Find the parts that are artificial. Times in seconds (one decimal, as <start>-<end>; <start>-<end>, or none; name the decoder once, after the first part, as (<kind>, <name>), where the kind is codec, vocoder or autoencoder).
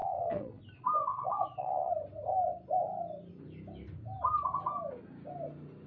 0.0-0.6 (vocoder, WaveNeXt); 1.1-1.9